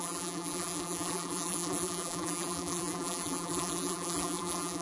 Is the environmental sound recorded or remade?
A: remade